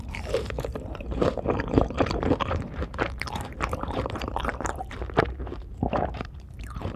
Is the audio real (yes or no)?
no